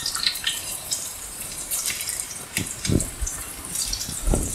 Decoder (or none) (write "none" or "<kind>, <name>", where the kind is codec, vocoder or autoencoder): vocoder, BigVGAN v2